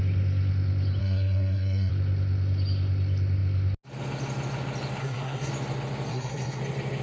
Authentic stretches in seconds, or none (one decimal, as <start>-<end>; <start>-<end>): 0.0-1.0; 1.9-5.0; 5.5-6.1; 6.6-7.0